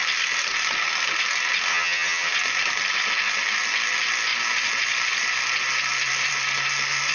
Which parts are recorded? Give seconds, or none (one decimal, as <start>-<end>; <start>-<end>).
0.0-1.7; 2.3-7.1